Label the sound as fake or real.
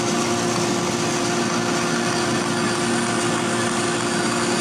real